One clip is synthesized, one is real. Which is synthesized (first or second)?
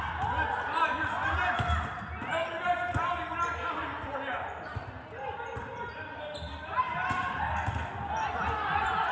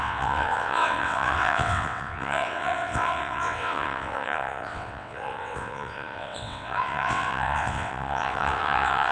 second